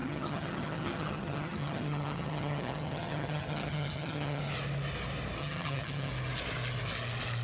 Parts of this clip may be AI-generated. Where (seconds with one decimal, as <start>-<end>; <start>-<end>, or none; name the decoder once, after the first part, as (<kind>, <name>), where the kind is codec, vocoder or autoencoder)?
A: 0.0-4.4 (vocoder, HiFi-GAN); 5.4-6.1